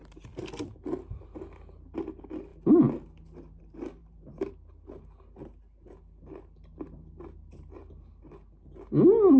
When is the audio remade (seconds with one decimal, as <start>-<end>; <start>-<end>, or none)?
4.0-4.5